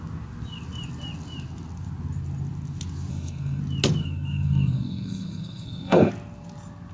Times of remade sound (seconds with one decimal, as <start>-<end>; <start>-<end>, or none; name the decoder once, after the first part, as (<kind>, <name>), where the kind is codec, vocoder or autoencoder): 3.1-3.6 (codec, SNAC); 4.0-6.1